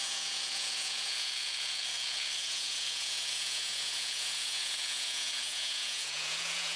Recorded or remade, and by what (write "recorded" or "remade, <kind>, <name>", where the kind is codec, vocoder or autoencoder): remade, vocoder, Vocos